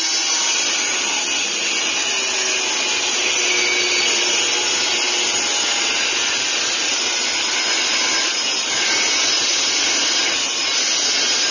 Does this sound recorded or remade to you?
recorded